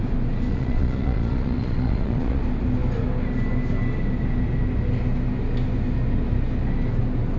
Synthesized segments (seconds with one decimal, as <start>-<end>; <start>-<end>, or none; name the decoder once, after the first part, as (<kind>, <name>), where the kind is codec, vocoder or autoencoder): 0.5-2.4 (vocoder, Vocos)

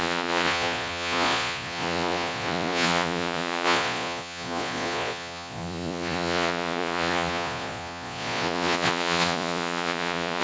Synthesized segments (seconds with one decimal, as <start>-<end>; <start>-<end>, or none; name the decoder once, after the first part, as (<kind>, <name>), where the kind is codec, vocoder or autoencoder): 0.0-10.4 (vocoder, Vocos)

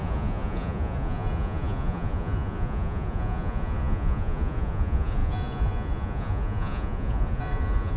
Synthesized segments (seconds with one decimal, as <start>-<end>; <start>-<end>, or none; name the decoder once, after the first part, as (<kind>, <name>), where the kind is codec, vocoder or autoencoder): 0.0-8.0 (vocoder, Vocos)

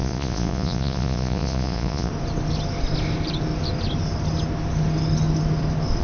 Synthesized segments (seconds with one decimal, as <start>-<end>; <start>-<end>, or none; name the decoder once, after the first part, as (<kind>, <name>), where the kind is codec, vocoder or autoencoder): 0.0-2.1 (vocoder, Vocos)

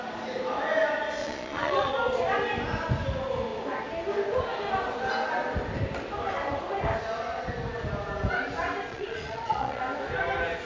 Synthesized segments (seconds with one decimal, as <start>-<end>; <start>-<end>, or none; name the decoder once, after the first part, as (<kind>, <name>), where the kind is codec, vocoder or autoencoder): 1.2-1.9 (vocoder, Vocos); 8.9-9.8